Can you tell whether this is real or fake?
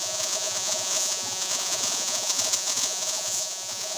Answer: fake